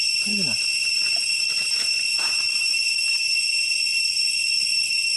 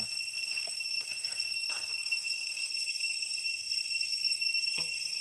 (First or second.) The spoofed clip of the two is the second